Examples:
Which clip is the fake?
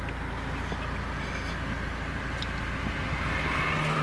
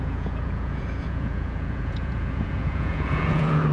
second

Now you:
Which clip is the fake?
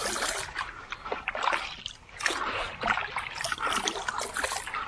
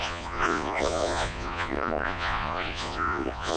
second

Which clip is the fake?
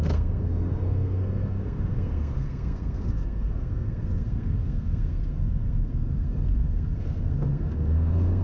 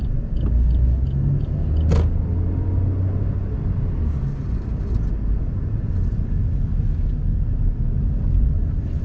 first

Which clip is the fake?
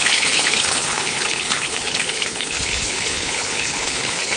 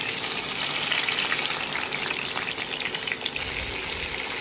first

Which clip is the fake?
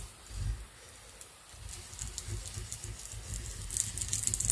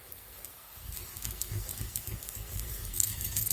second